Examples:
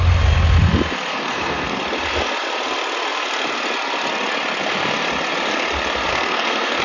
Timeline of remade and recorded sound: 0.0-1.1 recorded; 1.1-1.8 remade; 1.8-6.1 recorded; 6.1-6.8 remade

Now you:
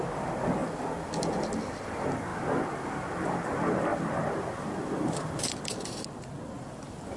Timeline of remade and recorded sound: 0.0-7.2 recorded

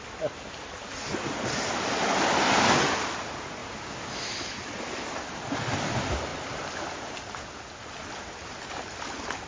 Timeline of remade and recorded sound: 0.0-9.5 recorded